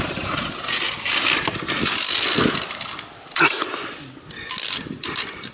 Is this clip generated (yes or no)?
no